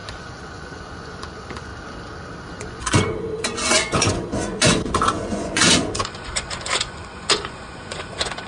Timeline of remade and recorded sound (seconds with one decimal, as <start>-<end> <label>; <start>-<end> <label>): 0.0-1.7 remade; 1.7-2.5 recorded; 2.5-8.5 remade